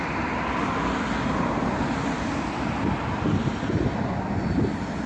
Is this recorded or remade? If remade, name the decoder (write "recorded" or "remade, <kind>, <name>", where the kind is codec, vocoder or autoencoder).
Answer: recorded